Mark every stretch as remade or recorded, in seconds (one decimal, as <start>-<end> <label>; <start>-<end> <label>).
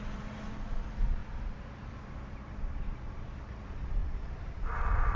0.0-5.2 recorded